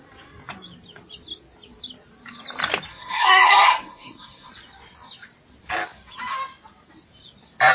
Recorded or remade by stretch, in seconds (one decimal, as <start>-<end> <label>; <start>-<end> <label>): 0.0-2.9 recorded; 2.9-4.5 remade; 4.5-7.7 recorded